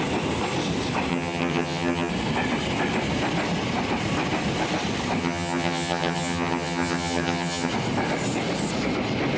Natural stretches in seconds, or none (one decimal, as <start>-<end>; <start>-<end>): 0.0-1.1; 2.1-5.2; 7.7-9.4